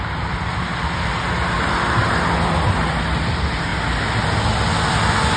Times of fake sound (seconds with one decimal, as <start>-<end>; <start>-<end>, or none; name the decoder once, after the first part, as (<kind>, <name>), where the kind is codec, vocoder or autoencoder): none